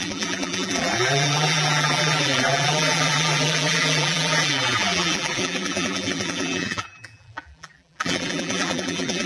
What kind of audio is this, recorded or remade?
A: remade